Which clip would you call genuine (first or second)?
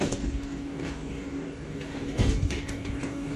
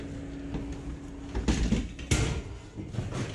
second